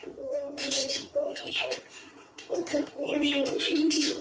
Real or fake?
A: fake